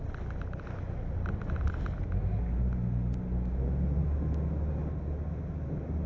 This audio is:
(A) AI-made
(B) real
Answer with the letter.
B